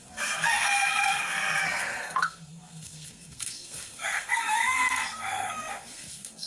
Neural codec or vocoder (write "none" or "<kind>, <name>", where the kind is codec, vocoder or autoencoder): codec, SNAC